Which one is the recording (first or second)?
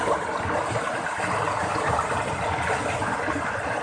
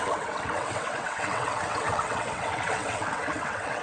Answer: first